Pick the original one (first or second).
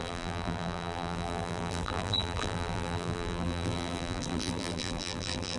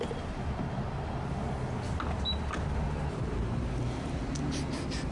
second